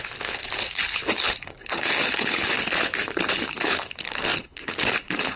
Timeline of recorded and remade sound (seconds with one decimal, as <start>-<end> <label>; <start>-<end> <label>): 0.0-5.4 remade